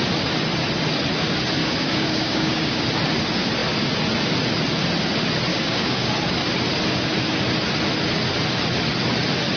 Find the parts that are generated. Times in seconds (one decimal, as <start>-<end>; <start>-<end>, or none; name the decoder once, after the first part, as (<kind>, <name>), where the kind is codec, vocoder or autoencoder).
1.6-2.8 (codec, DAC); 5.5-6.1